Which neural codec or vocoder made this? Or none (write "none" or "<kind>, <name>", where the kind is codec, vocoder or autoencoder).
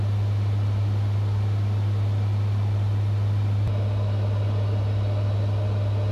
none